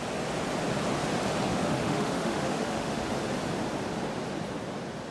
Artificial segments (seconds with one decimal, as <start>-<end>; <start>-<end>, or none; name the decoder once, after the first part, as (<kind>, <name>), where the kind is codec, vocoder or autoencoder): 1.5-3.1 (autoencoder, DAC-VAE)